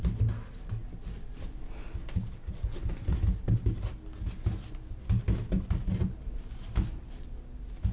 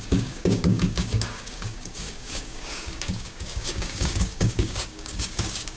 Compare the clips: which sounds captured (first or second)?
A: first